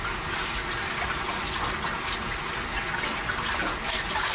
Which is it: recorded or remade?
recorded